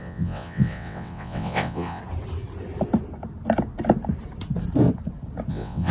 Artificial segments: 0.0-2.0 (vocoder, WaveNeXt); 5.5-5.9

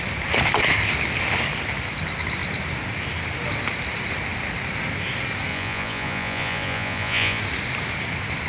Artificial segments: 5.5-7.4 (vocoder, Vocos)

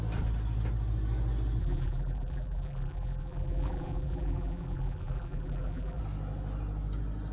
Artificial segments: 1.6-6.0 (vocoder, BigVGAN v2)

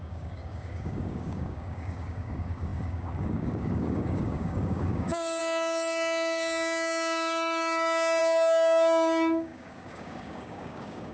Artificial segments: 0.0-11.1 (codec, DAC)

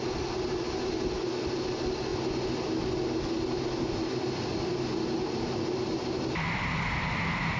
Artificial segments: none

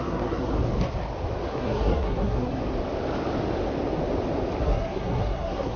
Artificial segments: 0.0-0.5 (codec, SNAC); 1.5-2.6; 4.6-5.8

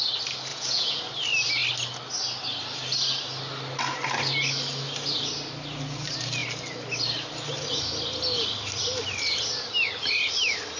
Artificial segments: 0.5-1.0 (vocoder, Vocos)

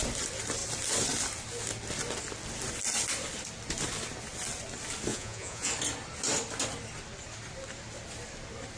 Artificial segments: 5.1-5.7 (vocoder, Vocos)